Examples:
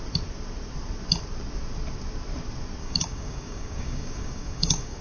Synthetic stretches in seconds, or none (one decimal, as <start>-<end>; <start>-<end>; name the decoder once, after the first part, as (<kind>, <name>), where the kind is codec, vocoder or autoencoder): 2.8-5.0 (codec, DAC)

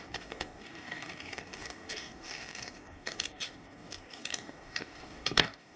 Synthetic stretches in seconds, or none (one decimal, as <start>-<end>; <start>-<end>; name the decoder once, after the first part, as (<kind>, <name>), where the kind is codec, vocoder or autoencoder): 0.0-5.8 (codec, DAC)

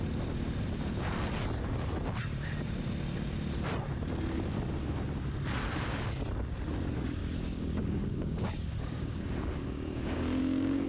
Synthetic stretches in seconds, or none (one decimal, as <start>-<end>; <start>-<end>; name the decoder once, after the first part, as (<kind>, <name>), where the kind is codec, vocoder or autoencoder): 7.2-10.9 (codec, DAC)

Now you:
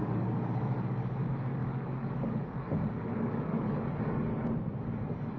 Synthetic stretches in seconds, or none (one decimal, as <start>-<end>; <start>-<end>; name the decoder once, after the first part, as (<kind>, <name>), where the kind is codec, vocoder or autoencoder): 0.0-4.3 (codec, DAC); 4.8-5.4

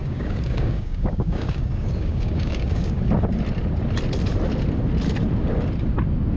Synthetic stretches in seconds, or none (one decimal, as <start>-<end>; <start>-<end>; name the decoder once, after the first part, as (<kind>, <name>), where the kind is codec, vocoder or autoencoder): 0.0-3.0 (codec, DAC)

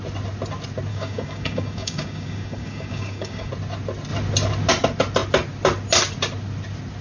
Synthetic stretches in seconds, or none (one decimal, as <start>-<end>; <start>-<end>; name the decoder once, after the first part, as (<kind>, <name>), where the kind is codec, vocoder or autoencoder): 0.9-3.5 (codec, DAC)